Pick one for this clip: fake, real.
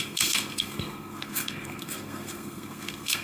fake